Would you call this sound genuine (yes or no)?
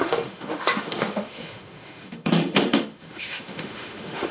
no